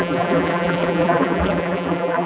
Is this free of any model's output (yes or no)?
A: no